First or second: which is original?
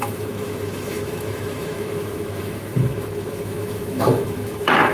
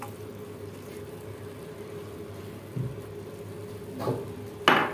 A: second